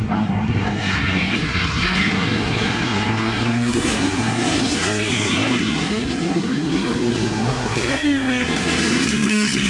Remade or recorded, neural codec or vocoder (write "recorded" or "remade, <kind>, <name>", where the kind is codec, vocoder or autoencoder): remade, codec, SNAC